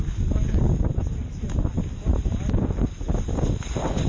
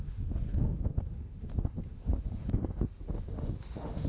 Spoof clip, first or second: second